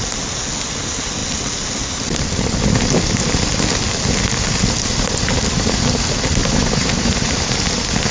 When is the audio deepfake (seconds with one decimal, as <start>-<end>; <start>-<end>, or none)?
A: 6.4-7.6